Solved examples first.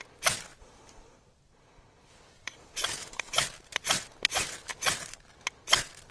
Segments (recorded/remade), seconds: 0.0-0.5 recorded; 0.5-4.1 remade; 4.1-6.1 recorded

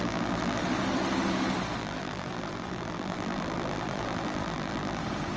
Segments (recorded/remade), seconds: 0.0-0.6 remade; 0.6-1.8 recorded; 1.8-5.0 remade; 5.0-5.4 recorded